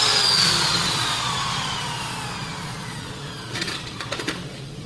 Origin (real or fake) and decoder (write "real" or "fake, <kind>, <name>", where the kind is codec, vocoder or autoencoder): fake, vocoder, Vocos